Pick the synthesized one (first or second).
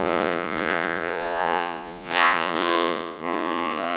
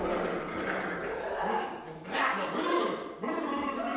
first